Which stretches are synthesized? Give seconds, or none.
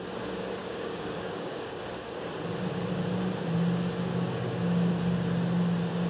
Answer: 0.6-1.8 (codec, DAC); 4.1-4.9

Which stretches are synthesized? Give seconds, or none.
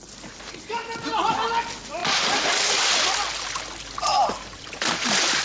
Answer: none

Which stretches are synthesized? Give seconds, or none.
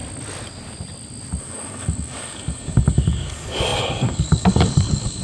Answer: 1.4-5.2 (codec, DAC)